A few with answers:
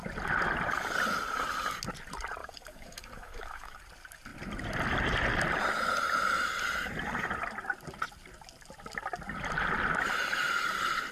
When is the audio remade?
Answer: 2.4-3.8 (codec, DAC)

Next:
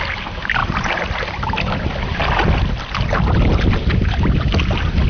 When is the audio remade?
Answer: none

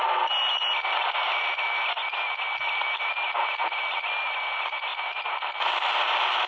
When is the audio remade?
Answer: none